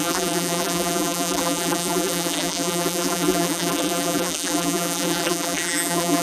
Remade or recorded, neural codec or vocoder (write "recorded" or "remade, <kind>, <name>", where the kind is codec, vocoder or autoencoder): remade, vocoder, BigVGAN v2